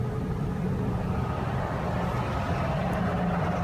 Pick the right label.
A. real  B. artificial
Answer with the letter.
A